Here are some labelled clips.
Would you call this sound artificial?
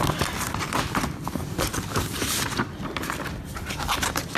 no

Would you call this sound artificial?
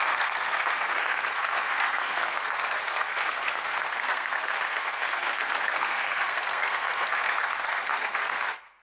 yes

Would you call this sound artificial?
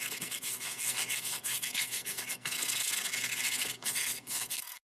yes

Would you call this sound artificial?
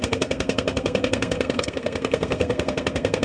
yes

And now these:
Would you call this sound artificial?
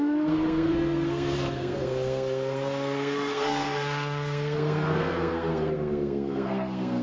yes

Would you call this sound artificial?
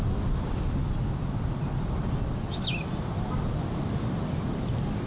no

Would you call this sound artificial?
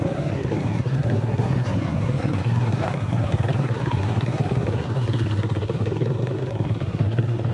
yes